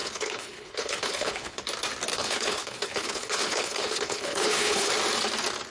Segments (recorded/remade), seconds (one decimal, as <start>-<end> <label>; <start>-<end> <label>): 0.0-1.6 remade; 1.6-2.1 recorded; 2.1-4.9 remade; 4.9-5.7 recorded